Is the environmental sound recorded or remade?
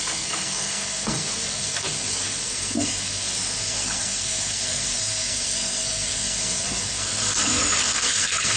remade